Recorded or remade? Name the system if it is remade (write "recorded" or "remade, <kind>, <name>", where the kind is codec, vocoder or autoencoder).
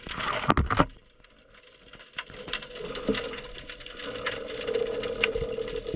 recorded